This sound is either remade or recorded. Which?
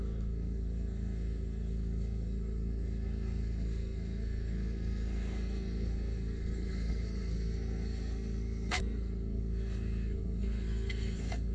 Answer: remade